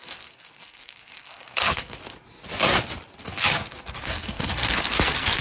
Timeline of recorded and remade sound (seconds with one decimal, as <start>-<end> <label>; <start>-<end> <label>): 0.0-2.0 remade; 2.0-3.3 recorded; 3.3-5.4 remade